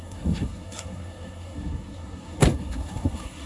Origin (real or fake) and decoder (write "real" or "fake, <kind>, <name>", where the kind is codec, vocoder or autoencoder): fake, codec, SNAC